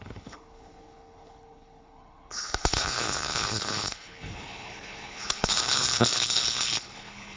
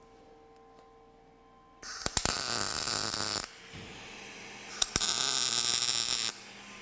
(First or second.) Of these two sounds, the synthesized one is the first